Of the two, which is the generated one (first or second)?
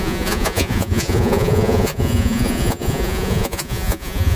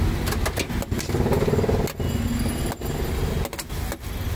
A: first